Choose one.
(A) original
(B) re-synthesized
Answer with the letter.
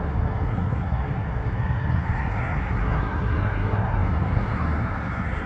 B